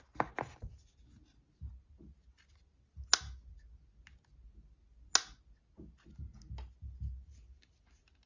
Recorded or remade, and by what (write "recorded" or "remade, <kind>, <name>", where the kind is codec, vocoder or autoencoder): recorded